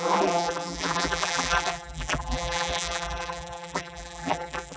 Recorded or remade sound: remade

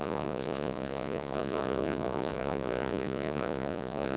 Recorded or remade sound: remade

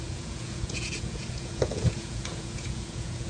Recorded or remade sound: remade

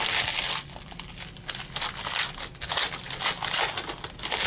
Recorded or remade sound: recorded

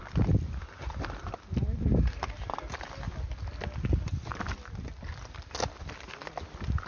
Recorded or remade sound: recorded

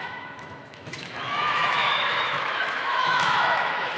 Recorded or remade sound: remade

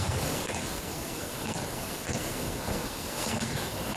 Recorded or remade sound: remade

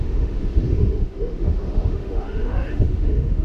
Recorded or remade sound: remade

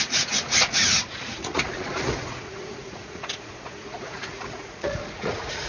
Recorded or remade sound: remade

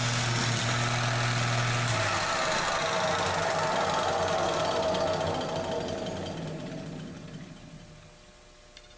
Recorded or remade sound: recorded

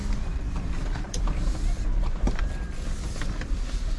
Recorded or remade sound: remade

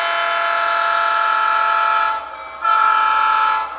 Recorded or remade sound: recorded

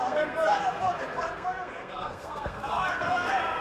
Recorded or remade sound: remade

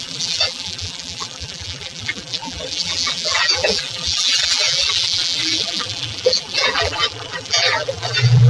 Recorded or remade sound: remade